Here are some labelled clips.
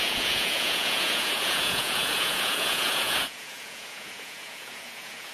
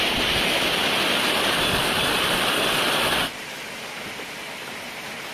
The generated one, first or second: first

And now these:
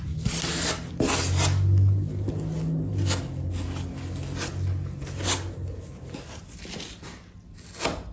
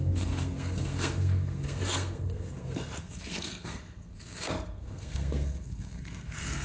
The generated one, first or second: second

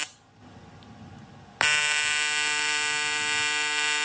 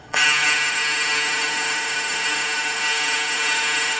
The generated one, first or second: second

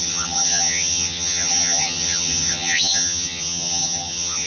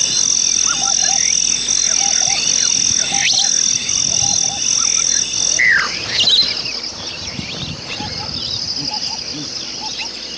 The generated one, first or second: first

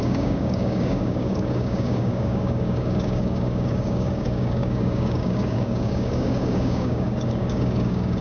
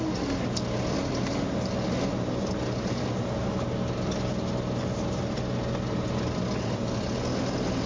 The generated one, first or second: first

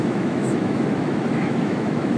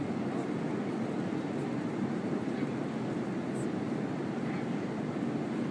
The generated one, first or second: first